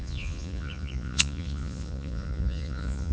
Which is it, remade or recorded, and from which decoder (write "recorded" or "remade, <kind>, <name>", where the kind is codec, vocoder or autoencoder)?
remade, vocoder, Vocos